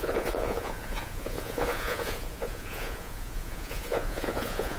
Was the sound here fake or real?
fake